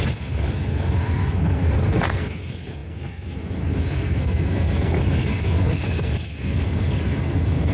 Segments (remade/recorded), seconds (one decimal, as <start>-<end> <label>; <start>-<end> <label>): 0.0-7.7 remade